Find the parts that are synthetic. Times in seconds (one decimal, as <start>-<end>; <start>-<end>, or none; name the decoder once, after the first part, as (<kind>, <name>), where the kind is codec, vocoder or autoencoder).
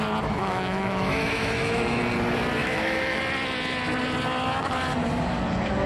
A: 0.4-2.0 (autoencoder, DAC-VAE); 2.6-3.2